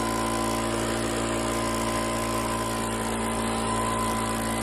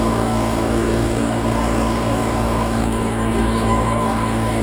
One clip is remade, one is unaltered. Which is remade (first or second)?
second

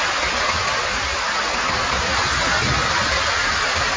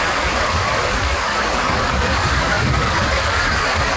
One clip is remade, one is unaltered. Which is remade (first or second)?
second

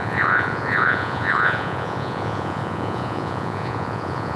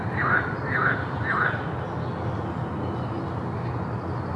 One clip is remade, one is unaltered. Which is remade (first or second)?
first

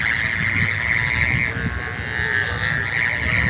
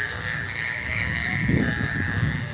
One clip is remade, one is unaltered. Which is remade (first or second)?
second